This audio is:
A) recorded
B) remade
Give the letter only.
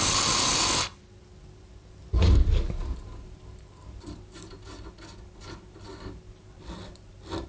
A